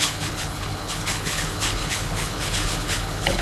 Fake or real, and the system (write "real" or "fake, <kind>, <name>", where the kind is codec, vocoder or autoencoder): fake, codec, HILCodec